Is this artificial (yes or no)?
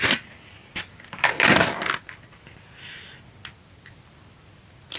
no